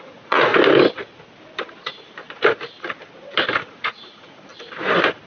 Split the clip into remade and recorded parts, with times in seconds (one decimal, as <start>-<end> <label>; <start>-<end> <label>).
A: 0.0-0.5 remade; 0.5-3.7 recorded; 3.7-4.5 remade; 4.5-5.3 recorded